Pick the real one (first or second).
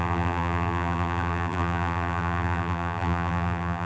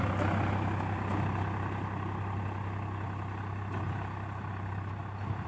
second